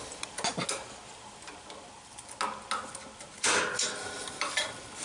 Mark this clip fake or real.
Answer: real